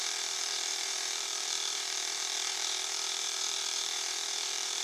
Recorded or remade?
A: remade